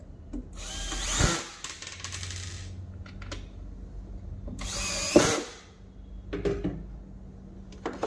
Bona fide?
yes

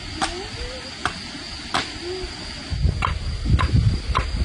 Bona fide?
yes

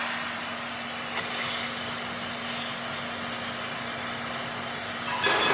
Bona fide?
yes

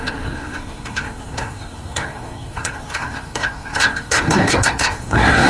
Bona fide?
no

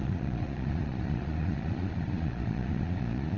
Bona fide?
no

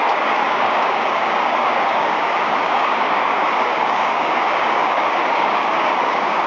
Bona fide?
no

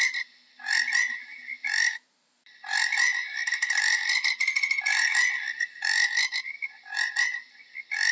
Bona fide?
yes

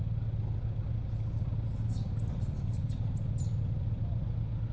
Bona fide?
yes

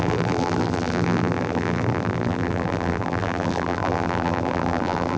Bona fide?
no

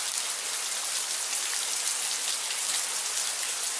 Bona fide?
yes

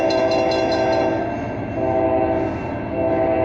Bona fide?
yes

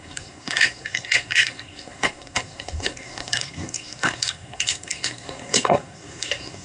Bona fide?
no